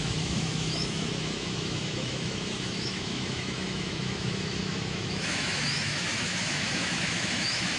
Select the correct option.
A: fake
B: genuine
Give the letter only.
A